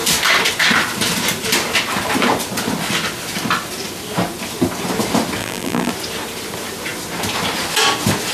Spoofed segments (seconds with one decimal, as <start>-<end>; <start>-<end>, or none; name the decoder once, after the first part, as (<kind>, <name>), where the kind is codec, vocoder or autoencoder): 5.4-5.9 (vocoder, BigVGAN v2)